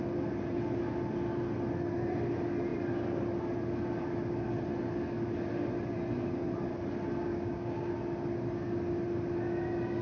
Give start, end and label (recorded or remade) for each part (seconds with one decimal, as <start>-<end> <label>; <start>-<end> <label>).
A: 0.0-7.2 recorded; 7.2-7.9 remade; 7.9-10.0 recorded